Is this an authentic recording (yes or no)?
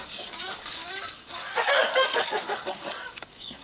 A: no